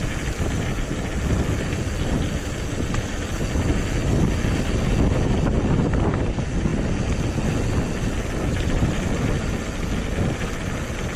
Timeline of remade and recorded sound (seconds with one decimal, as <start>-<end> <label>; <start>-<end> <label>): 0.0-11.2 recorded